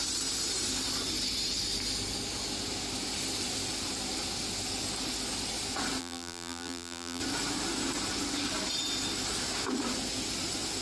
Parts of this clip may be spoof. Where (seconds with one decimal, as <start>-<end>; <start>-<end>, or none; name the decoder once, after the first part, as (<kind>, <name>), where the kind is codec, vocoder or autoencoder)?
6.0-7.2 (vocoder, BigVGAN v2)